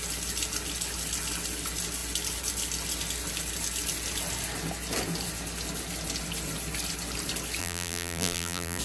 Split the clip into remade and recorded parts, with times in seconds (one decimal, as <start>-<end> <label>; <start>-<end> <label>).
0.0-7.6 recorded; 7.6-8.8 remade